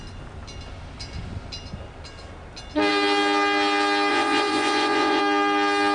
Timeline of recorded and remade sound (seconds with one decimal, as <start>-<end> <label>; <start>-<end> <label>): 0.0-4.1 recorded; 4.1-5.2 remade; 5.2-5.9 recorded